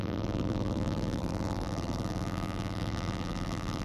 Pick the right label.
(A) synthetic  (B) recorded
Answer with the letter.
A